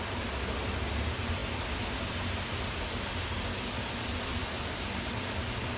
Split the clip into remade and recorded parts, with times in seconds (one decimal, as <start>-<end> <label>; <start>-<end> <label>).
0.0-5.8 recorded